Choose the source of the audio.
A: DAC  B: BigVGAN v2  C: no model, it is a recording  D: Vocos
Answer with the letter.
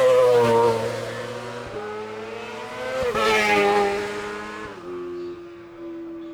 C